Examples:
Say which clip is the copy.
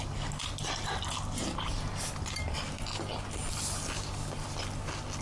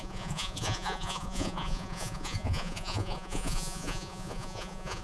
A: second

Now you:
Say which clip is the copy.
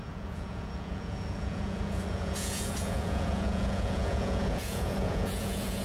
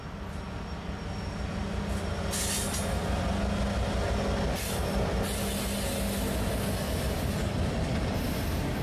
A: first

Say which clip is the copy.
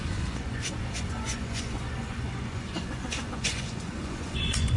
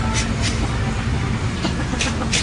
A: first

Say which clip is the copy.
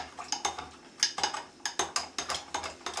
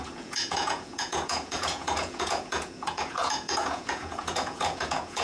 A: second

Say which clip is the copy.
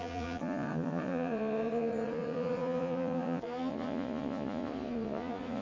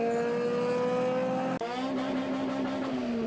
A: first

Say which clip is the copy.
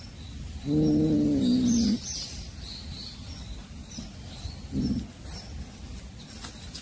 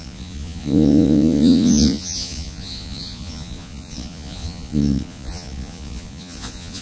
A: second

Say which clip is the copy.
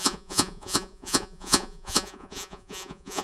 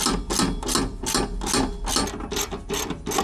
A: first